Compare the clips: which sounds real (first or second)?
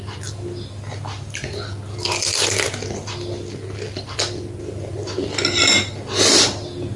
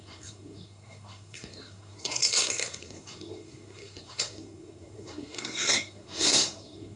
first